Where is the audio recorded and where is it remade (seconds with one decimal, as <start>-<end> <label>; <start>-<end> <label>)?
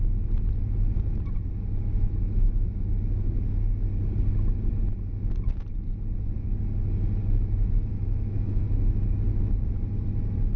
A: 0.0-7.9 recorded; 7.9-8.6 remade; 8.6-10.6 recorded